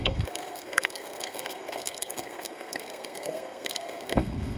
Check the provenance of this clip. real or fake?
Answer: fake